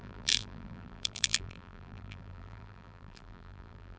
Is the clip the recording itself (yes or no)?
no